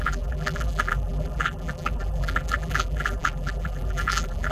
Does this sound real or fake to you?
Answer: fake